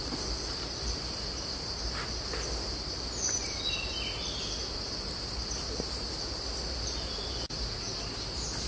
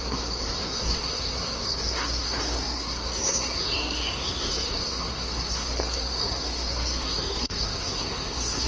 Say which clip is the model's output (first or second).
second